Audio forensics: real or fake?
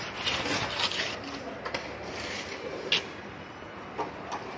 real